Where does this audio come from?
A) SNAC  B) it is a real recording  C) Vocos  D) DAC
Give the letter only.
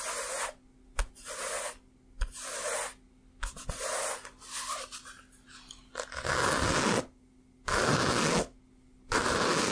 B